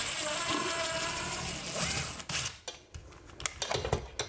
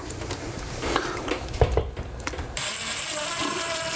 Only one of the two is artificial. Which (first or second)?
second